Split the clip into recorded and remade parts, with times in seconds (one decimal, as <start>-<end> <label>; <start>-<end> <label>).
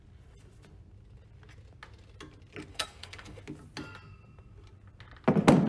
0.0-2.7 recorded; 2.7-3.4 remade; 3.4-5.7 recorded